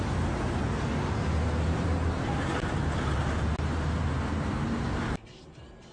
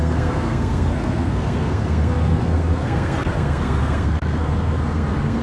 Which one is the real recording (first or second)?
first